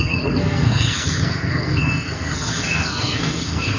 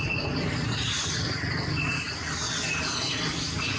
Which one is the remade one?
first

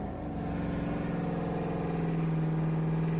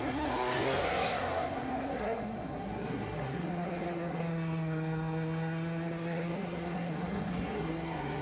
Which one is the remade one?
second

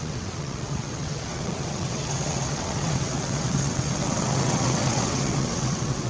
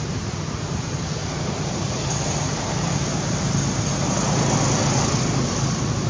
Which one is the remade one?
first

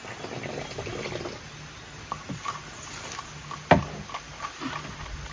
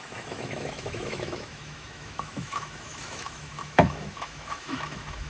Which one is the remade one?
second